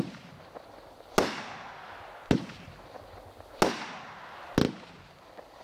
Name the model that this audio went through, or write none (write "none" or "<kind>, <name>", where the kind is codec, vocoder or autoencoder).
none